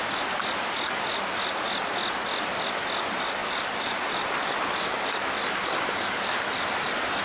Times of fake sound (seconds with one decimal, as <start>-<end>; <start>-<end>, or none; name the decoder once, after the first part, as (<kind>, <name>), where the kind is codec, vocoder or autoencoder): 3.4-6.4 (vocoder, BigVGAN v2)